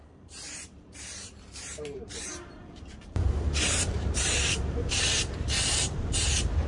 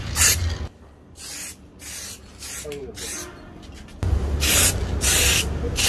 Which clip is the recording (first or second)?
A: second